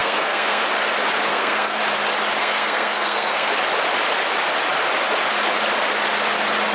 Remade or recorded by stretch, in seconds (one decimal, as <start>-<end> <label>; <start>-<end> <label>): 0.0-0.6 remade; 0.6-1.3 recorded; 1.3-1.8 remade; 1.8-2.4 recorded; 2.4-3.5 remade; 3.5-6.7 recorded